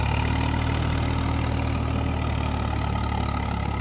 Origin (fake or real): real